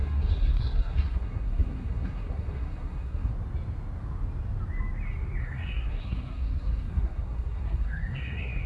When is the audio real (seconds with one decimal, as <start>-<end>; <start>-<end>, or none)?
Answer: 3.3-5.4